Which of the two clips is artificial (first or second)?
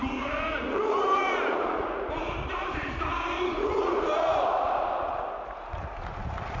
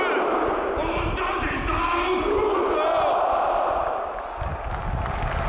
first